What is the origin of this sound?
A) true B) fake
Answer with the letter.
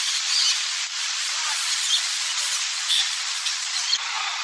B